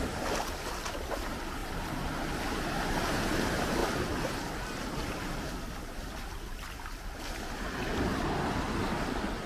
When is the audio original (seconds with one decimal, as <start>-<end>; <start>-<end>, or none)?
0.0-1.6; 2.4-9.5